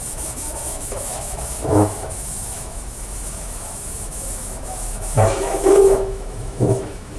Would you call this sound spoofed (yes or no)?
yes